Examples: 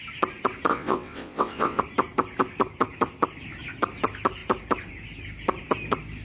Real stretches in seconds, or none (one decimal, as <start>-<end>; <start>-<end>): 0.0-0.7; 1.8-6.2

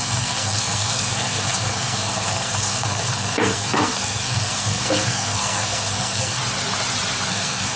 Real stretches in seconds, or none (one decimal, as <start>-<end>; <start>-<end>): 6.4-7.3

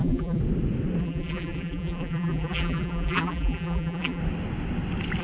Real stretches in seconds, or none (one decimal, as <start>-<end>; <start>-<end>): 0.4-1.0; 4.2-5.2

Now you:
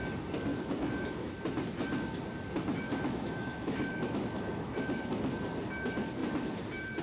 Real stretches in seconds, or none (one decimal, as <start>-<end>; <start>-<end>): 0.0-0.5; 1.3-2.9; 5.3-7.0

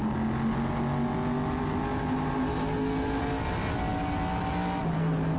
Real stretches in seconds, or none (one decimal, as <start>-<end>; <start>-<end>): 0.0-5.4

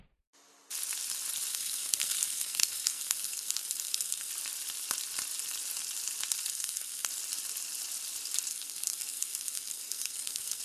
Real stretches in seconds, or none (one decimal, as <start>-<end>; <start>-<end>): 0.0-1.5; 4.3-6.5; 7.1-8.5

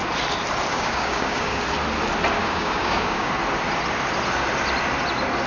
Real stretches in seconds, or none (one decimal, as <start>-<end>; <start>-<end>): 0.0-0.7; 1.6-2.4; 3.3-5.5

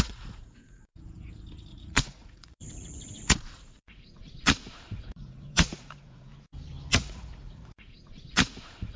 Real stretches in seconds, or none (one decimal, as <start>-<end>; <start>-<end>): 0.9-1.6; 6.3-6.9